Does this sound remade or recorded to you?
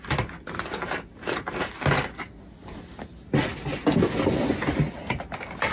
recorded